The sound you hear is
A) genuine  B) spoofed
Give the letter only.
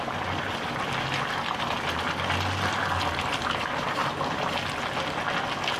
A